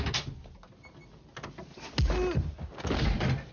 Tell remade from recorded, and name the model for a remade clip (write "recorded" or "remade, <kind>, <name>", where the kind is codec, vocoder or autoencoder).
recorded